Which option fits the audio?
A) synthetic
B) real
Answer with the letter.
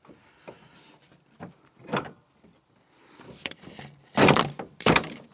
A